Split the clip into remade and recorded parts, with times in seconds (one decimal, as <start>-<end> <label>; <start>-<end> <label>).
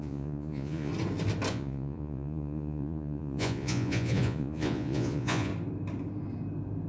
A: 0.0-0.9 remade; 0.9-1.5 recorded; 1.5-5.5 remade; 5.5-6.9 recorded